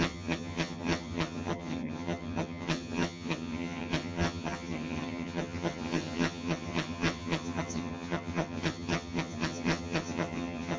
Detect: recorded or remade remade